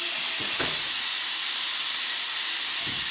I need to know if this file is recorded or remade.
recorded